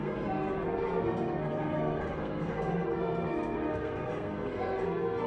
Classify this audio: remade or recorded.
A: remade